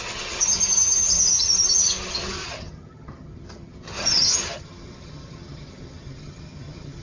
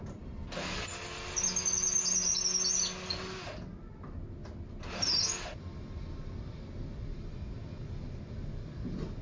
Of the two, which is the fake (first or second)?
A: first